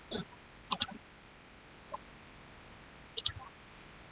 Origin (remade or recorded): recorded